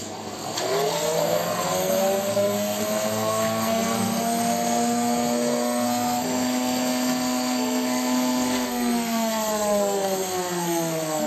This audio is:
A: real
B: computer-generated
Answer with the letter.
B